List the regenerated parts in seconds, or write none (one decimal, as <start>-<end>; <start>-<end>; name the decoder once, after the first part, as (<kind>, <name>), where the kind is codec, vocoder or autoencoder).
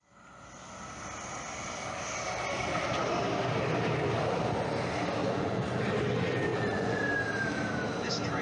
5.2-5.8 (vocoder, Vocos); 6.5-7.0